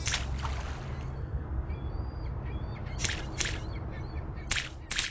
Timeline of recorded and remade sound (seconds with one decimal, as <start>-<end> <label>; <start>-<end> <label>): 0.0-1.2 recorded; 1.2-1.7 remade; 1.7-5.1 recorded